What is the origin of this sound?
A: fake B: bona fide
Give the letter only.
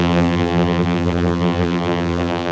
A